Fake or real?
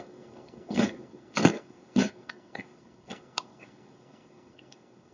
fake